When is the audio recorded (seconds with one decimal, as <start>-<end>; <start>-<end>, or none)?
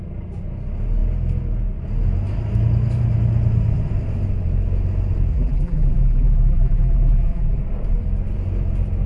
0.0-5.3; 7.6-9.1